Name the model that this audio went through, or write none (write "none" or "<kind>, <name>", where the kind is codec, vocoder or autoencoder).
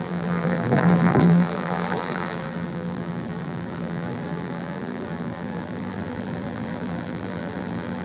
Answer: vocoder, BigVGAN v2